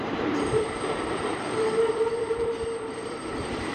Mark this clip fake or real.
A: fake